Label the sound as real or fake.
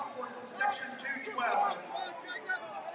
real